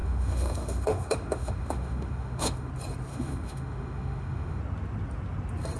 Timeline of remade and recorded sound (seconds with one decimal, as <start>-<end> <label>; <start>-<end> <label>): 0.0-2.7 remade; 2.7-3.1 recorded; 3.1-4.6 remade; 4.6-5.8 recorded